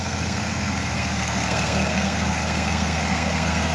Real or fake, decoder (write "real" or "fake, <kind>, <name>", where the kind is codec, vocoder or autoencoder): fake, codec, SNAC